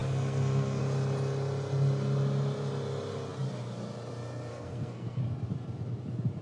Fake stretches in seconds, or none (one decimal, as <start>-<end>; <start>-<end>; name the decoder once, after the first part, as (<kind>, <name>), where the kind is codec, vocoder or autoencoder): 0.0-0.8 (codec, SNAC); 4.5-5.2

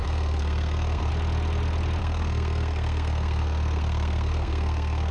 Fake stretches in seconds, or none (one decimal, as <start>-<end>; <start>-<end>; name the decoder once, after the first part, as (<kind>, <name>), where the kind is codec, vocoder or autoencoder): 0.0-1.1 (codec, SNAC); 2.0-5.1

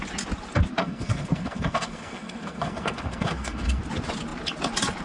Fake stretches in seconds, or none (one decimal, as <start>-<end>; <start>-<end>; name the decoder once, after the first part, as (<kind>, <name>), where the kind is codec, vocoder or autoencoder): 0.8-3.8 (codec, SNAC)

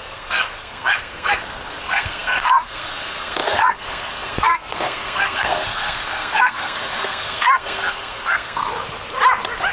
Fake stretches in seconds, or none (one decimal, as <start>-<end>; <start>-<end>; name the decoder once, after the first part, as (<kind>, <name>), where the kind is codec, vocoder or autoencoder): 0.0-8.6 (codec, SNAC)

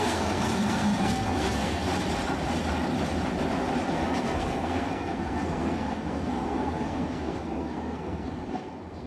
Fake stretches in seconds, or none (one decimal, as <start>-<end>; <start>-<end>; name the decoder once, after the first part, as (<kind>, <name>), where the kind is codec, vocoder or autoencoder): 0.0-1.9 (codec, SNAC); 3.9-9.1

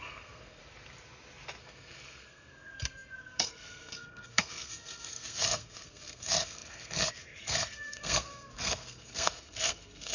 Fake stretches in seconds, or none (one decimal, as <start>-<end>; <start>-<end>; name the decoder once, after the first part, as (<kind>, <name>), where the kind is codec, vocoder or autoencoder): 0.0-0.6 (codec, SNAC); 1.6-10.1